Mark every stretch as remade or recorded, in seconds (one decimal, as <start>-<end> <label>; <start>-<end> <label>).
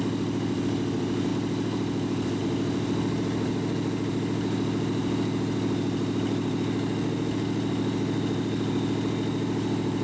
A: 0.0-10.0 recorded